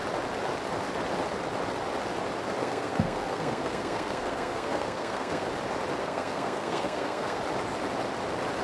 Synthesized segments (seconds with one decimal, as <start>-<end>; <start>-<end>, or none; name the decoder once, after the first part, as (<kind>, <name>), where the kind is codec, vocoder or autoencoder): 2.6-5.5 (codec, SNAC); 6.0-7.4